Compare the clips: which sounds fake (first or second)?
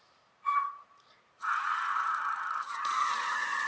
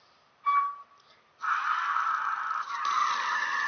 first